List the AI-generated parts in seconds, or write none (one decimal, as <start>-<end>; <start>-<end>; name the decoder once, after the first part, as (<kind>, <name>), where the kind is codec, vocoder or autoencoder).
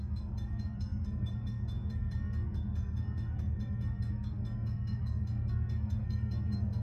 0.0-6.8 (codec, SNAC)